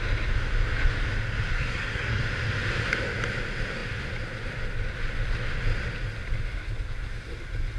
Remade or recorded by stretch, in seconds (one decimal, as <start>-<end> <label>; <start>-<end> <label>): 0.0-1.5 recorded; 1.5-2.2 remade; 2.2-7.8 recorded